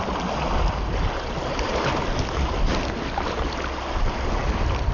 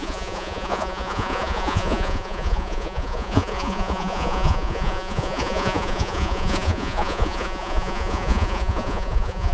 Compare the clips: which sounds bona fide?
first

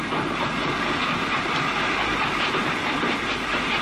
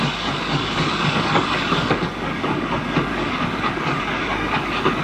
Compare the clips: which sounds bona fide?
first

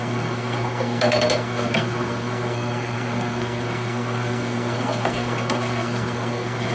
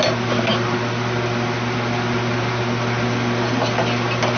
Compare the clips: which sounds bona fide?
second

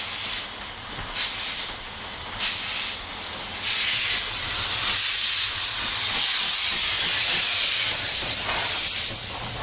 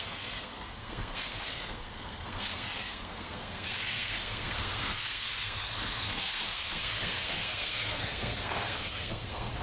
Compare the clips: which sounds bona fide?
first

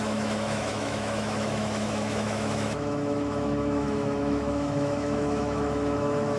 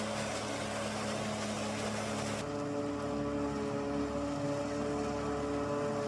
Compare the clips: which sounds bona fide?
second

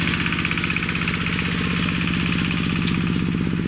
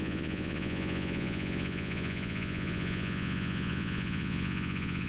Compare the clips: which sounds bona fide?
first